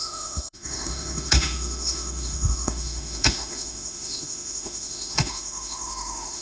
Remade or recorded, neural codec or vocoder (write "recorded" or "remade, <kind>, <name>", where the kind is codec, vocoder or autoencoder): remade, autoencoder, DAC-VAE